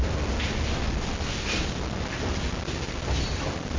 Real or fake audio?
real